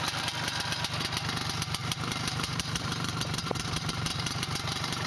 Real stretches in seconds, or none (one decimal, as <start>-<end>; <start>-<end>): 0.0-1.8